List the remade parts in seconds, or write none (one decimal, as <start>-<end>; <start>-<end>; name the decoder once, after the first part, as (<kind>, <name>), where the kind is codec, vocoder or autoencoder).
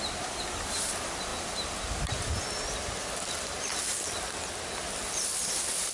none